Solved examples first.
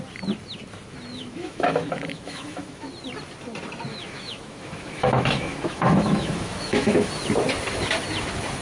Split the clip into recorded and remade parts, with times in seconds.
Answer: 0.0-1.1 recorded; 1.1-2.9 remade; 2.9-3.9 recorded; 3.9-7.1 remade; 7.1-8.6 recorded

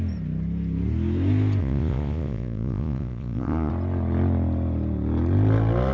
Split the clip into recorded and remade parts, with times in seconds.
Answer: 0.0-1.6 recorded; 1.6-3.7 remade; 3.7-5.9 recorded

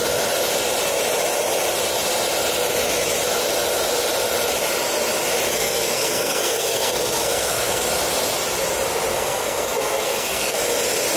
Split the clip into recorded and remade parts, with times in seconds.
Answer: 0.0-5.5 recorded; 5.5-7.8 remade; 7.8-9.1 recorded; 9.1-10.6 remade; 10.6-11.2 recorded

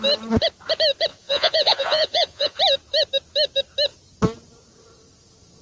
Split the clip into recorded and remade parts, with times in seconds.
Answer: 0.0-1.1 recorded; 1.1-2.6 remade; 2.6-5.6 recorded

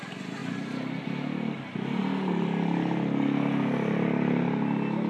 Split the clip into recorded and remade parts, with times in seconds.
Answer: 0.0-5.1 recorded

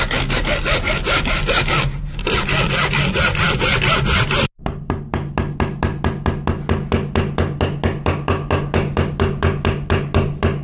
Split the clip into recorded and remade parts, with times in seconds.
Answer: 0.0-10.6 recorded